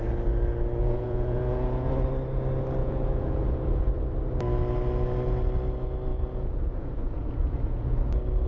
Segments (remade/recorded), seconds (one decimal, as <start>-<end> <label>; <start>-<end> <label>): 0.0-0.8 recorded; 0.8-1.9 remade; 1.9-2.8 recorded; 2.8-3.9 remade; 3.9-6.1 recorded; 6.1-7.9 remade; 7.9-8.5 recorded